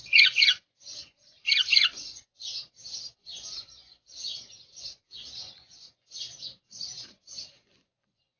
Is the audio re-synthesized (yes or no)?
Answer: yes